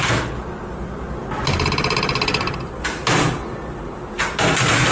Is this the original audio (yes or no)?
yes